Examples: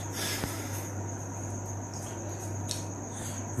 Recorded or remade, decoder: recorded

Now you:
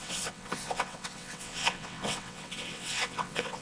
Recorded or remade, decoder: remade, vocoder, WaveNeXt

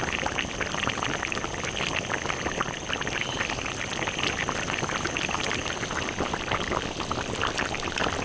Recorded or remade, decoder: recorded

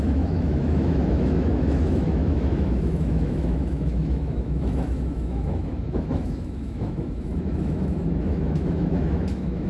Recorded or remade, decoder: remade, autoencoder, DAC-VAE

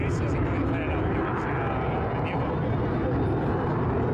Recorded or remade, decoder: recorded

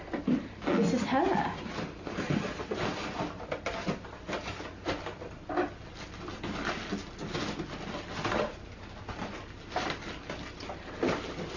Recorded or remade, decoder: recorded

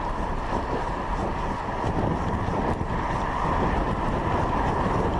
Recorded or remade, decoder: remade, vocoder, BigVGAN v2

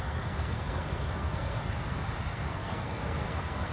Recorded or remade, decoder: remade, codec, SNAC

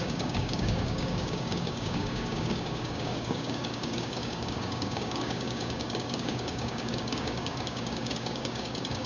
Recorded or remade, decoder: remade, codec, DAC